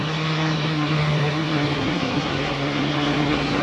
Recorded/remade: remade